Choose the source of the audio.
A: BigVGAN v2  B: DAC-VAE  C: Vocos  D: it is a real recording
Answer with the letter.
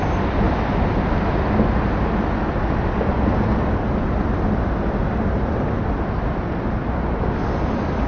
D